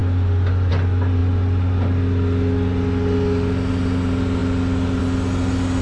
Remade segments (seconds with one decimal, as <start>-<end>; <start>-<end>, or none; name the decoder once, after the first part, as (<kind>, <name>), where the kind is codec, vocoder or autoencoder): none